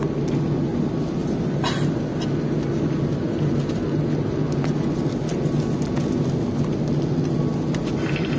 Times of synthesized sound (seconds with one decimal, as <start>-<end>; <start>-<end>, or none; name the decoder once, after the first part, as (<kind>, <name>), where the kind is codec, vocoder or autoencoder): none